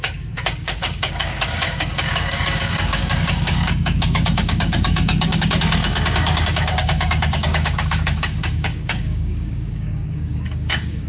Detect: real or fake fake